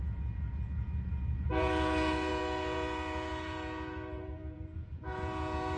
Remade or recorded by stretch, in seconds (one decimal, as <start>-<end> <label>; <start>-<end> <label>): 0.0-5.8 remade